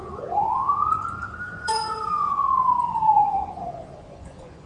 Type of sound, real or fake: fake